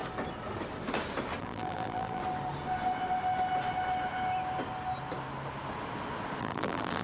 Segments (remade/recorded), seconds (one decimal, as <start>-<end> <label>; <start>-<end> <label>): 0.0-1.4 recorded; 1.4-2.2 remade; 2.2-6.4 recorded; 6.4-7.0 remade